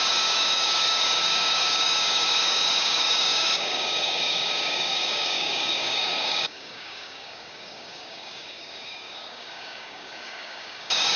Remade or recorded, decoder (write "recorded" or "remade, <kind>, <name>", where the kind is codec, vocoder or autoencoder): remade, codec, DAC